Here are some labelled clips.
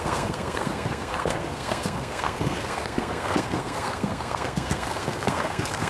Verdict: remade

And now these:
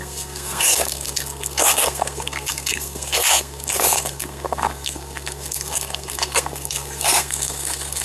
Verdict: remade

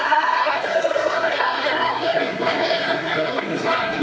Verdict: remade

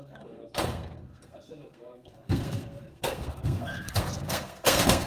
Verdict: remade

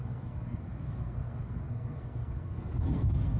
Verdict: remade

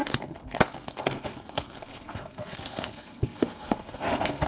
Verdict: remade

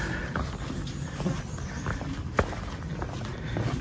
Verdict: recorded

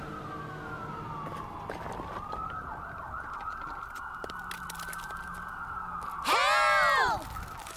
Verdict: recorded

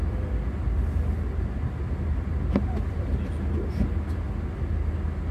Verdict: recorded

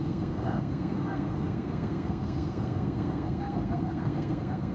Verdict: remade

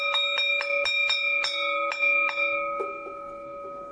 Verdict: recorded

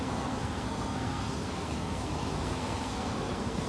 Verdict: remade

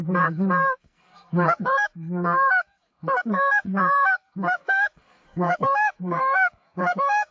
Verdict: remade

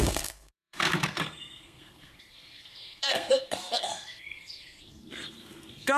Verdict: remade